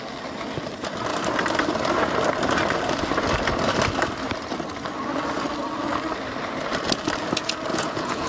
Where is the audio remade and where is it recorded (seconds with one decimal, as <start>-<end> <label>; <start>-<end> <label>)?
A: 0.0-7.7 recorded; 7.7-8.3 remade